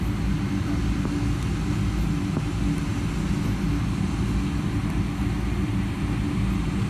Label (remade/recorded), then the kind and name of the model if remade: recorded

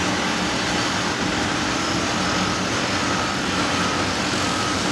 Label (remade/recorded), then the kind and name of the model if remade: recorded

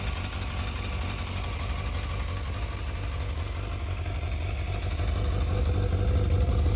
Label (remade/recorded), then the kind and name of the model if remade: recorded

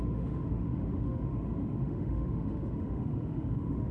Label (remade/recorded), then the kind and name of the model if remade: remade, autoencoder, DAC-VAE